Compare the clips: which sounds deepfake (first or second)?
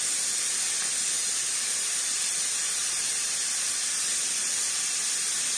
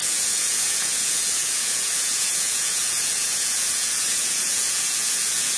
second